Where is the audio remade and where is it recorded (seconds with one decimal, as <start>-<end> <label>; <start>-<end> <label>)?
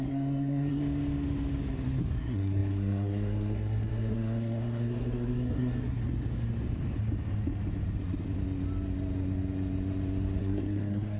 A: 0.0-0.8 remade; 0.8-2.0 recorded; 2.0-6.0 remade; 6.0-10.4 recorded; 10.4-11.2 remade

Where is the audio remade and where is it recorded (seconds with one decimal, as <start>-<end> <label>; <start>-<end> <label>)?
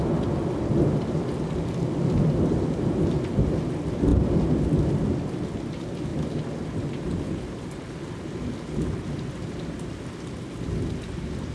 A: 0.0-11.5 recorded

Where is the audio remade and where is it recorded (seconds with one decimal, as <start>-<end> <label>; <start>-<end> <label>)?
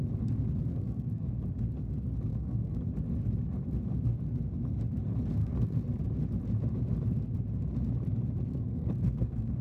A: 0.0-0.7 recorded; 0.7-1.4 remade; 1.4-2.3 recorded; 2.3-2.8 remade; 2.8-5.4 recorded; 5.4-6.0 remade; 6.0-8.5 recorded; 8.5-9.6 remade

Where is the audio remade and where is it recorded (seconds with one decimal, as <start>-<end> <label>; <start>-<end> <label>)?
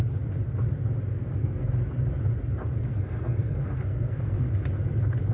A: 0.0-1.1 recorded; 1.1-1.7 remade; 1.7-2.7 recorded; 2.7-4.5 remade; 4.5-5.3 recorded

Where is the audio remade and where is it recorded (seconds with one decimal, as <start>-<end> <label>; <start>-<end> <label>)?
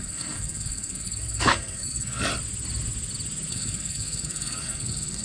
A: 0.0-2.3 remade; 2.3-3.5 recorded; 3.5-5.2 remade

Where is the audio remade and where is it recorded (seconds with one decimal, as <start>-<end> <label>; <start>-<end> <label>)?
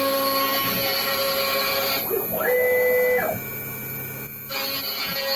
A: 0.0-5.4 recorded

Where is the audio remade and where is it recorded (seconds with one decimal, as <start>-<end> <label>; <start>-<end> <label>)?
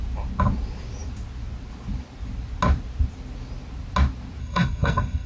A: 0.0-4.4 recorded; 4.4-5.3 remade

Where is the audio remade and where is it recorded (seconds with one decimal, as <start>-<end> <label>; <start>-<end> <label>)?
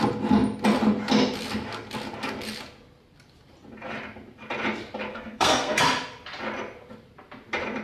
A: 0.0-5.1 recorded; 5.1-5.8 remade; 5.8-7.8 recorded